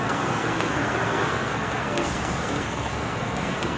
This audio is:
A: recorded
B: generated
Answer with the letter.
B